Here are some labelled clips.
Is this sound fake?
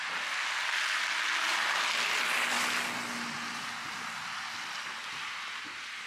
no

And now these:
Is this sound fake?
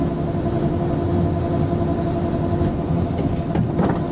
no